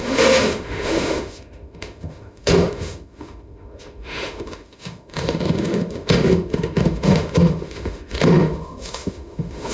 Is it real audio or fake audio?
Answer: fake